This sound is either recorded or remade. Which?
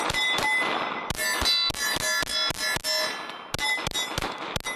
recorded